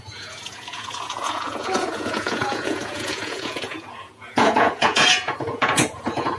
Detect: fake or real fake